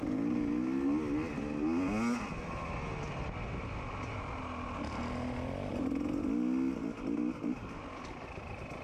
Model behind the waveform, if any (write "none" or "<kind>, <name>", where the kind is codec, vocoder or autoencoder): none